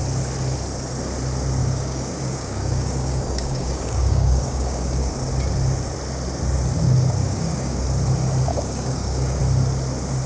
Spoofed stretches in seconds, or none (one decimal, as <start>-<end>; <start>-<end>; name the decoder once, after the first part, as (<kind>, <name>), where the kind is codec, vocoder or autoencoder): 1.6-5.1 (codec, DAC); 7.2-7.8; 8.5-9.4